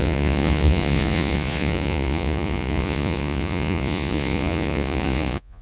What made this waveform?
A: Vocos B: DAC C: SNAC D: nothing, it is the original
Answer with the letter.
A